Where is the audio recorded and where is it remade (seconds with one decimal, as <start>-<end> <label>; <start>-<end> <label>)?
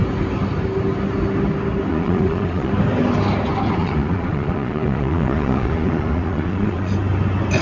0.0-1.9 recorded; 1.9-2.7 remade; 2.7-3.8 recorded; 3.8-6.9 remade; 6.9-7.6 recorded